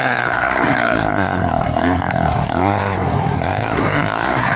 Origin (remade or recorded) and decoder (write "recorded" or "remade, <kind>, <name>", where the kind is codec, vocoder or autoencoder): remade, codec, SNAC